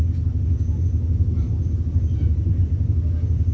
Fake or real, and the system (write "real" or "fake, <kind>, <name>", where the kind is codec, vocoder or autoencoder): real